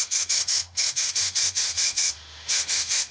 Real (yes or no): no